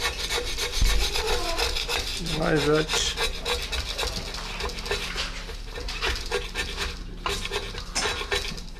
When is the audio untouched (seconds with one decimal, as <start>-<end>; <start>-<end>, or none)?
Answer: 0.0-8.8